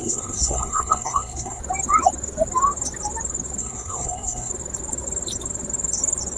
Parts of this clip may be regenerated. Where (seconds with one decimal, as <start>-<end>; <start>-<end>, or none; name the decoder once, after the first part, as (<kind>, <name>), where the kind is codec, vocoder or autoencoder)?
0.0-1.6 (codec, SNAC); 3.6-4.5